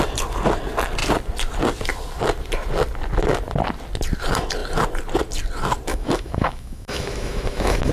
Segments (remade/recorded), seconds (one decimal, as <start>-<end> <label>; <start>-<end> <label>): 0.0-5.9 recorded; 5.9-7.9 remade